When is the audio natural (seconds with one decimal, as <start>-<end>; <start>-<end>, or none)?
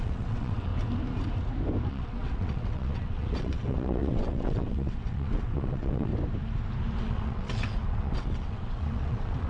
0.7-1.9; 6.1-7.0